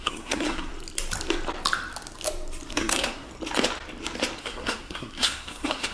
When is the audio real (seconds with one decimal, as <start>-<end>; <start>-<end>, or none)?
0.7-2.7; 3.3-4.4

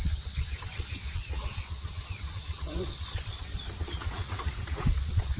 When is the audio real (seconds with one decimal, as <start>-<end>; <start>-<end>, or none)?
none

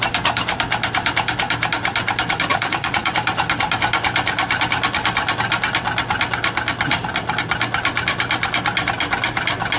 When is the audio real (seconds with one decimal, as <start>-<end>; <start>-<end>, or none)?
0.0-2.5; 3.1-9.8